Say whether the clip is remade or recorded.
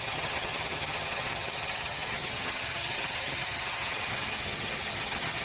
remade